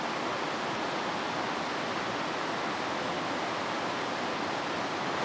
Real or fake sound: real